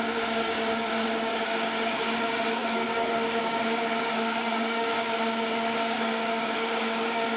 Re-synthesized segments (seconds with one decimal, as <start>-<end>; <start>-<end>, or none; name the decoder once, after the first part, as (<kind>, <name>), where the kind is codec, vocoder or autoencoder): 0.0-7.4 (codec, DAC)